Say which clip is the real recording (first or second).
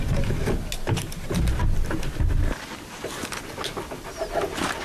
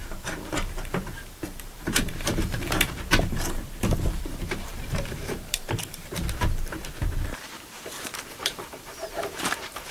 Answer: first